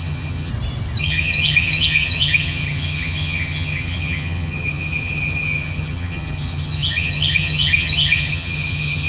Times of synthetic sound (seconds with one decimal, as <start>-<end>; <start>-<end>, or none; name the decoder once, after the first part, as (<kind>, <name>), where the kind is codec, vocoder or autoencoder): 0.0-0.5 (vocoder, HiFi-GAN); 1.0-9.1